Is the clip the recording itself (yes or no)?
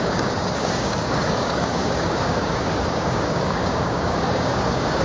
no